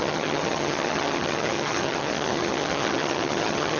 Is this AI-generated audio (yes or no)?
yes